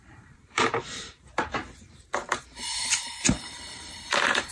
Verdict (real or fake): fake